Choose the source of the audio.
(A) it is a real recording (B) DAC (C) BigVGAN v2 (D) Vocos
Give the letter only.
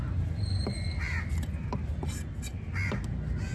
A